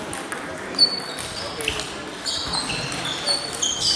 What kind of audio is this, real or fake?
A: real